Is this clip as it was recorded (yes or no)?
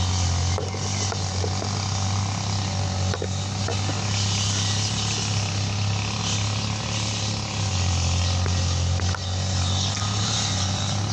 yes